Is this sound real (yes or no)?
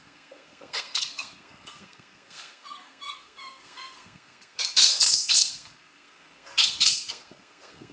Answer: no